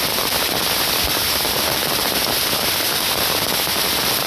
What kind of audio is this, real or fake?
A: real